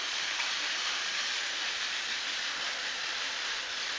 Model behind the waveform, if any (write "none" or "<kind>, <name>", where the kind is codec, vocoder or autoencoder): vocoder, BigVGAN v2